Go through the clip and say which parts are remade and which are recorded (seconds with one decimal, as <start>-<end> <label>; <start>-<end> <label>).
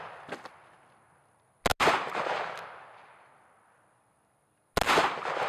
0.0-5.5 recorded